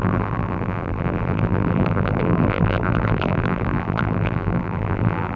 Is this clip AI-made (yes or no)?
yes